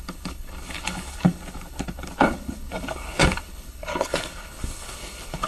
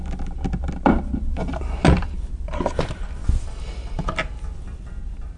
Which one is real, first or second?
second